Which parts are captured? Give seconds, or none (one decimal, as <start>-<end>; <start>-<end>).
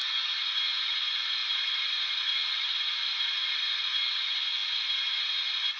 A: 0.0-1.4; 3.8-5.8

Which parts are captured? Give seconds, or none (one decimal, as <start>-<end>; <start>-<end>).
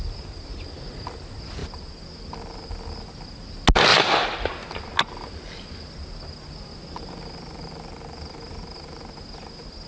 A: 0.0-3.9; 4.5-9.9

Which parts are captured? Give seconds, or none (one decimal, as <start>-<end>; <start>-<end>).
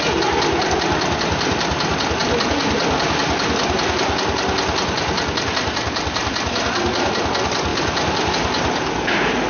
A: 0.0-9.5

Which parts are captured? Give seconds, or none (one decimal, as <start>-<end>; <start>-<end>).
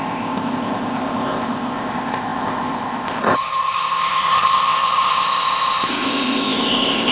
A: none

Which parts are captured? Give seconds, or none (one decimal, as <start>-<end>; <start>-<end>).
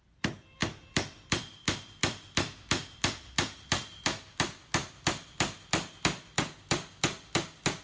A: none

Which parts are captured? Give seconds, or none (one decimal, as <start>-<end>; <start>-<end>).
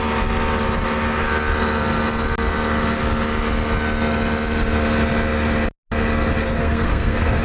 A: 0.0-6.4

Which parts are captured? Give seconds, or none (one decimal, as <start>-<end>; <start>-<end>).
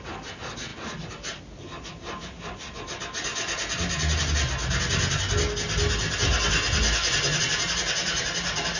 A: 0.0-8.8